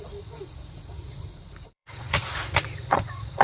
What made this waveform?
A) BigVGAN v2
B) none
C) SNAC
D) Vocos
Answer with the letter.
D